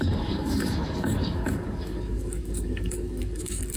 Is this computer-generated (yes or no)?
yes